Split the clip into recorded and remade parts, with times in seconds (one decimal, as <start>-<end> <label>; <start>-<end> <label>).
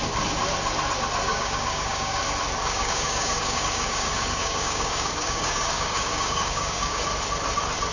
0.0-1.3 recorded; 1.3-2.2 remade; 2.2-2.6 recorded; 2.6-7.0 remade; 7.0-7.9 recorded